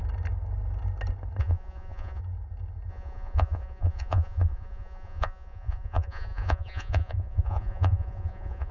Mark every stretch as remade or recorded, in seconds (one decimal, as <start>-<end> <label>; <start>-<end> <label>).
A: 0.0-1.4 recorded; 1.4-2.2 remade; 2.2-2.9 recorded; 2.9-8.7 remade